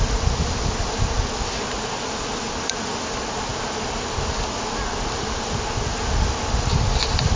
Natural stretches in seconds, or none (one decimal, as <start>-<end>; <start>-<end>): 0.0-7.4